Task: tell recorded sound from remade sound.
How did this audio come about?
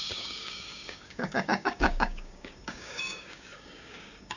remade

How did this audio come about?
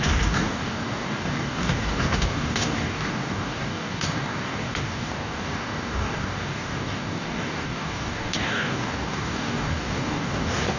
remade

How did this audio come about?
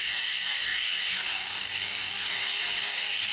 remade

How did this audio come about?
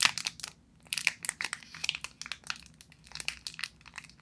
recorded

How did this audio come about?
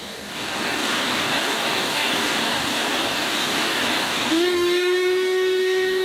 remade